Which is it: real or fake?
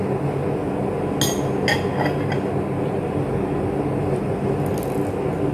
real